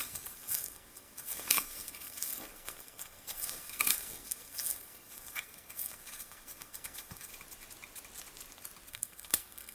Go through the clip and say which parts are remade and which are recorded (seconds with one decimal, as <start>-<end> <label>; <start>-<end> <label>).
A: 0.0-7.3 remade; 7.3-8.9 recorded; 8.9-9.7 remade